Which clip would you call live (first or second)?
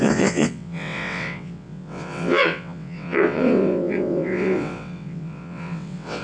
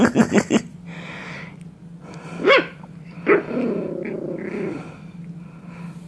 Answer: second